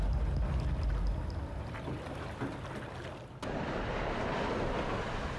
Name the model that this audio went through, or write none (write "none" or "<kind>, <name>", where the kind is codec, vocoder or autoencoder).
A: none